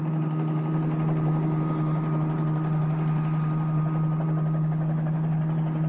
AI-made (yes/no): no